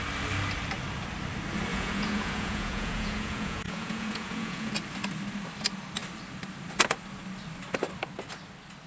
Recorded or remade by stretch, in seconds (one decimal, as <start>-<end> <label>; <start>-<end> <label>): 0.0-1.7 recorded; 1.7-4.7 remade; 4.7-8.9 recorded